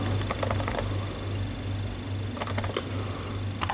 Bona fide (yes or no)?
yes